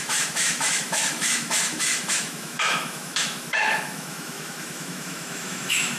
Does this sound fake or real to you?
fake